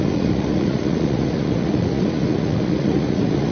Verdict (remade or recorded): remade